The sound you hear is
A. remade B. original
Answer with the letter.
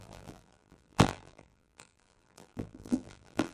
A